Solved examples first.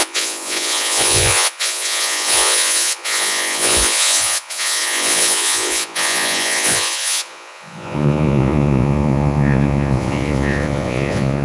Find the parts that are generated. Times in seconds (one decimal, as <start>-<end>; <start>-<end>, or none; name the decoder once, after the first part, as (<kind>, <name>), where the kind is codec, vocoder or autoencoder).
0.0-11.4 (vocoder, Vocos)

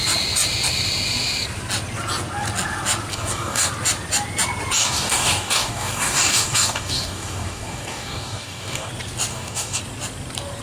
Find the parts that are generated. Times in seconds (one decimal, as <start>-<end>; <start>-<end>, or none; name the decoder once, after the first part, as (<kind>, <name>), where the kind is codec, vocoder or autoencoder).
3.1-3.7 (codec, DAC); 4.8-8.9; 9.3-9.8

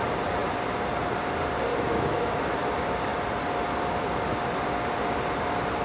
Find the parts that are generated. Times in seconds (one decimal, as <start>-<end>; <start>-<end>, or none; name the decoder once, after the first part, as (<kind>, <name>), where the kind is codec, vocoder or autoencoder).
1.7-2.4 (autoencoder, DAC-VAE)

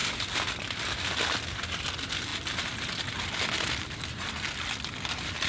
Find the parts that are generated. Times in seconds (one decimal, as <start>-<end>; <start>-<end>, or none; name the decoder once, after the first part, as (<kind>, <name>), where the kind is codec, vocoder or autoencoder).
none